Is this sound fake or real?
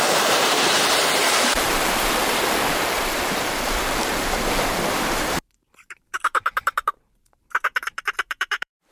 fake